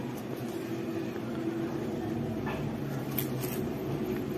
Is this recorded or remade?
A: recorded